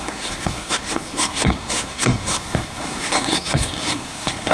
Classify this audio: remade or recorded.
remade